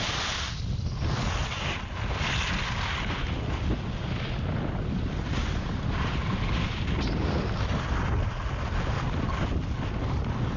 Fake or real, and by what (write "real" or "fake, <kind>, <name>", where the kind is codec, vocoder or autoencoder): real